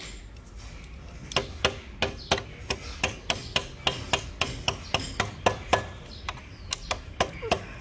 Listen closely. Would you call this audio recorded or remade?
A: recorded